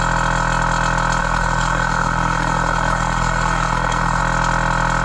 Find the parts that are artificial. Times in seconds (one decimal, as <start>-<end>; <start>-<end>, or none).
1.2-4.2